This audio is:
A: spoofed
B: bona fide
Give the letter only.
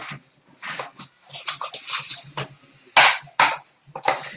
B